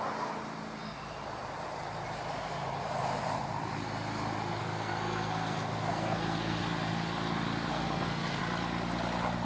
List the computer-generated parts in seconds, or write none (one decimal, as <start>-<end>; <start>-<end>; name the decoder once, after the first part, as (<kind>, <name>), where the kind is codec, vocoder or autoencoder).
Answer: 4.6-6.6 (codec, SNAC); 7.7-8.4